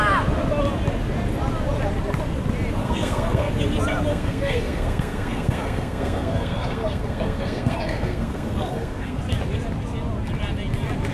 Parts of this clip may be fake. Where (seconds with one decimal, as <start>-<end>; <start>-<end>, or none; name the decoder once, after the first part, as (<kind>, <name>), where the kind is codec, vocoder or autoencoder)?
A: 2.8-3.5 (codec, SNAC); 4.1-9.2